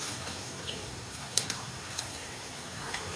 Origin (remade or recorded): remade